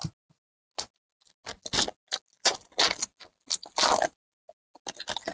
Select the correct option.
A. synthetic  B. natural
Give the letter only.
B